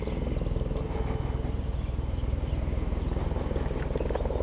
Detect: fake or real real